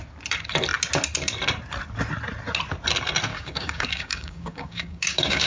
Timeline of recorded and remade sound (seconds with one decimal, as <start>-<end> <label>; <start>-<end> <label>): 0.0-3.3 recorded; 3.3-5.5 remade